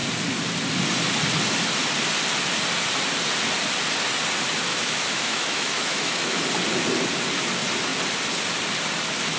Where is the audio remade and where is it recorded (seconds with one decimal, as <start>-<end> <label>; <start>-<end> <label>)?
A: 0.0-4.7 recorded; 4.7-6.4 remade; 6.4-9.4 recorded